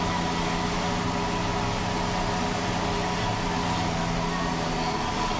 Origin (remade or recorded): recorded